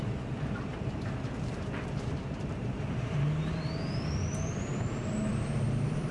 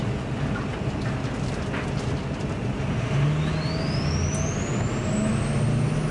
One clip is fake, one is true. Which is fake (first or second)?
first